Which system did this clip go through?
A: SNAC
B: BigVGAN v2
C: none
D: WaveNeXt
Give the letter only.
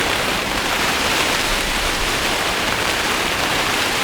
B